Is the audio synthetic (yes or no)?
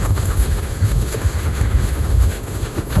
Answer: yes